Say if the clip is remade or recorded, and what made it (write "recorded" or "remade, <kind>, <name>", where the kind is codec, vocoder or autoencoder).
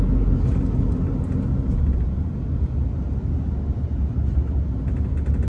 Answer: recorded